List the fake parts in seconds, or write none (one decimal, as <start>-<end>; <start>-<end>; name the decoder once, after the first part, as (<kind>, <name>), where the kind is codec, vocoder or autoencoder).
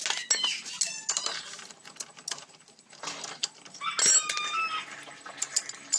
none